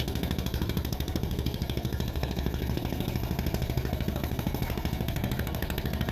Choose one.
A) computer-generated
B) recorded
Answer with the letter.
A